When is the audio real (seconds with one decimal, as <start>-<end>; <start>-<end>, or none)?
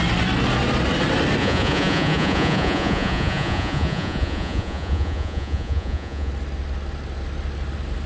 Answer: 0.0-1.4; 6.3-8.1